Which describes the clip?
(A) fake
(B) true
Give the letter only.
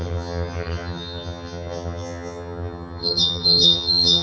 A